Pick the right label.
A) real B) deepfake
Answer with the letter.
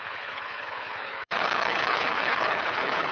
B